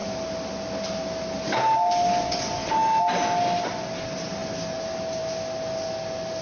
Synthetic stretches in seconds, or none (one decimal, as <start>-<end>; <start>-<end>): none